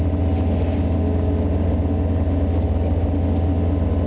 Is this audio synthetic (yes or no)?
no